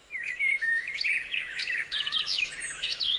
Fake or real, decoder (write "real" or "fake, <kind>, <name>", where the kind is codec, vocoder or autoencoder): fake, autoencoder, DAC-VAE